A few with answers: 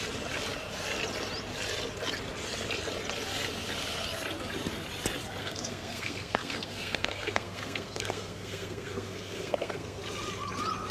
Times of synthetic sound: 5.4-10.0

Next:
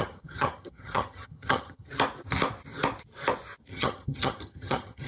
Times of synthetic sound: 0.0-1.9; 3.7-5.1

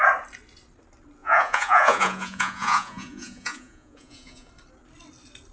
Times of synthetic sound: 1.2-4.5

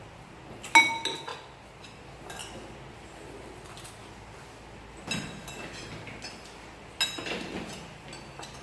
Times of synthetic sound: none

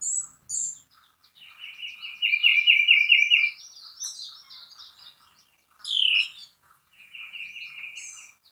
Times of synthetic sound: 6.4-7.9

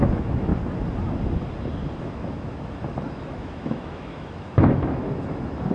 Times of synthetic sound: 0.0-0.5; 2.0-5.7

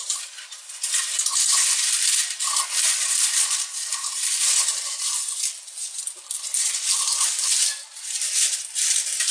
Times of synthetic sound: none